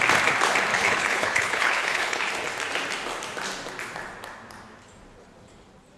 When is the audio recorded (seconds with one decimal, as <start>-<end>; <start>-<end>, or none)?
0.0-0.7; 2.3-6.0

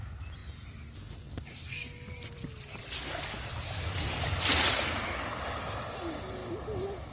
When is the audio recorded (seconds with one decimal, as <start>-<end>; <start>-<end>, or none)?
0.0-7.1